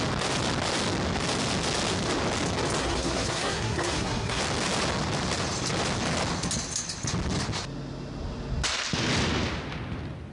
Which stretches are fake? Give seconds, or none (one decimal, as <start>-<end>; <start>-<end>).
2.8-4.4